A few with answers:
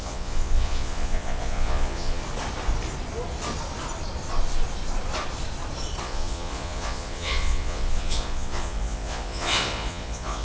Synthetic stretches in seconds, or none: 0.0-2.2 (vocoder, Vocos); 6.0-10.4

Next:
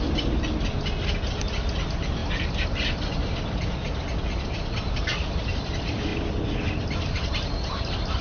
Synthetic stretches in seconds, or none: none

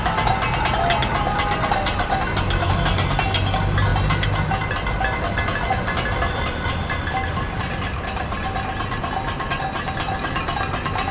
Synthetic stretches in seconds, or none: none

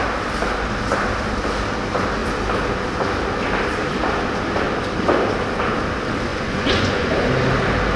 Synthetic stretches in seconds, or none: 6.3-7.1 (vocoder, Vocos)

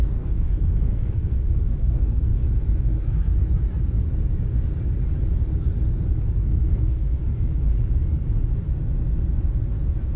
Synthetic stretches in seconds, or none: 0.0-2.3 (codec, SNAC); 2.8-3.4; 6.2-7.2

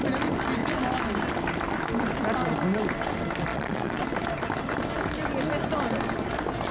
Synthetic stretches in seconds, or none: 3.5-4.0 (vocoder, Vocos)

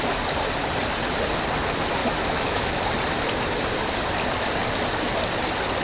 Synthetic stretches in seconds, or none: 2.0-2.8 (autoencoder, DAC-VAE)